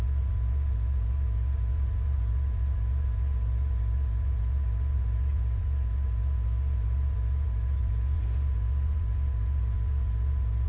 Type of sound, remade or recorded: recorded